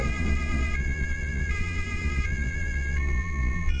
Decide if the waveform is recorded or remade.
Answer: remade